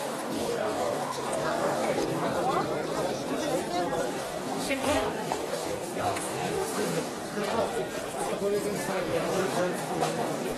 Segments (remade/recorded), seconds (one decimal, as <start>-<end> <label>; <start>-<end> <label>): 0.0-2.3 remade; 2.3-4.1 recorded; 4.1-7.5 remade; 7.5-8.9 recorded; 8.9-10.6 remade